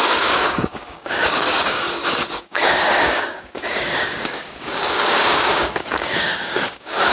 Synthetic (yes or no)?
yes